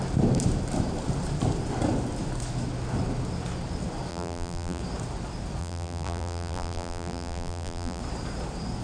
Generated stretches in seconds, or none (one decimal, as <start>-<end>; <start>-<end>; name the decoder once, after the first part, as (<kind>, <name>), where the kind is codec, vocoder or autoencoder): 4.1-4.8 (vocoder, BigVGAN v2); 5.6-8.0

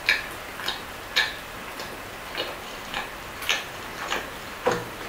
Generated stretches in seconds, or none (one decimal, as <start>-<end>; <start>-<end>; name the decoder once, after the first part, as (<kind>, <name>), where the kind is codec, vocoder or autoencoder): 3.9-5.1 (vocoder, BigVGAN v2)